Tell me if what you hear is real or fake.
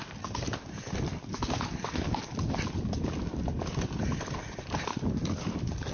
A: real